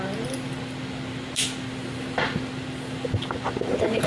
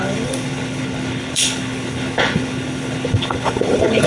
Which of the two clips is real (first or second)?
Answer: first